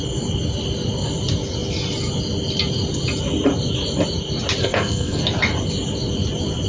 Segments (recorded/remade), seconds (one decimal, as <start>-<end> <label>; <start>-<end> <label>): 0.0-4.6 recorded; 4.6-5.2 remade; 5.2-6.7 recorded